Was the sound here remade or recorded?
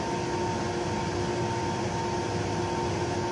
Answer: recorded